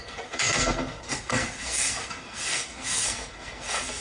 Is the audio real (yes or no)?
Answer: no